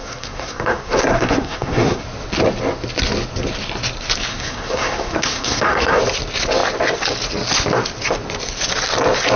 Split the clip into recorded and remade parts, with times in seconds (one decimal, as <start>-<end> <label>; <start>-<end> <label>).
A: 0.0-2.0 remade; 2.0-4.3 recorded; 4.3-6.0 remade; 6.0-9.4 recorded